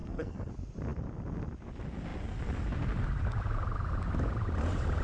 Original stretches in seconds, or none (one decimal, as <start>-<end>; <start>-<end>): 0.5-5.0